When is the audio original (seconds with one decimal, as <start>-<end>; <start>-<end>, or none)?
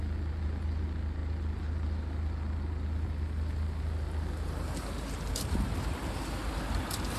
0.0-7.2